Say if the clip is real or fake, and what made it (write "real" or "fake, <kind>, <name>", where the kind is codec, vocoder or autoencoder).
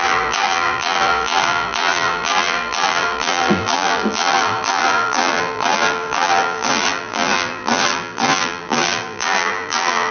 fake, vocoder, BigVGAN v2